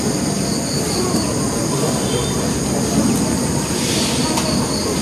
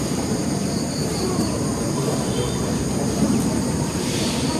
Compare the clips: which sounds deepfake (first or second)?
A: second